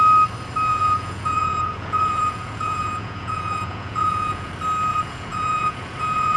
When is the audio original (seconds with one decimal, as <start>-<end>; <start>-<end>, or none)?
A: 0.0-0.7; 4.5-4.9